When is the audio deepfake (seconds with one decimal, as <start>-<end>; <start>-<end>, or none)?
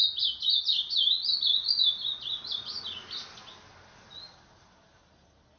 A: none